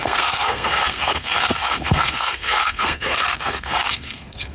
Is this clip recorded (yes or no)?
no